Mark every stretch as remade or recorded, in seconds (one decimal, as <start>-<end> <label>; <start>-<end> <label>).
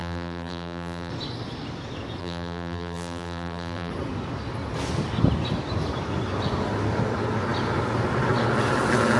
0.0-1.1 remade; 1.1-2.2 recorded; 2.2-3.9 remade; 3.9-9.2 recorded